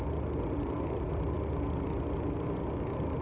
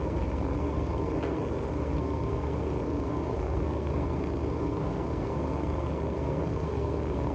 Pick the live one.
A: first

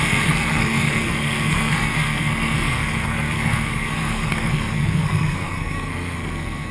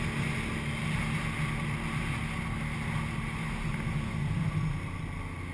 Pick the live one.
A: second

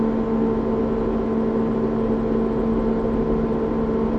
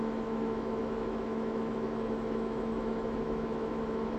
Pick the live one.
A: first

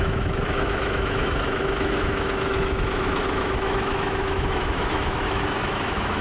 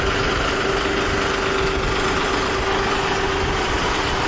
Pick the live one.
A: second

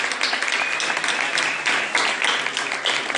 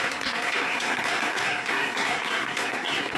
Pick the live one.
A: first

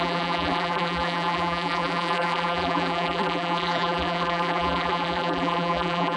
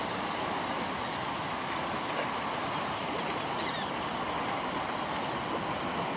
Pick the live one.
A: second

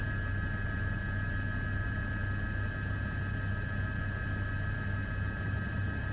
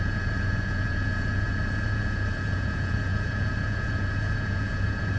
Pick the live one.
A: first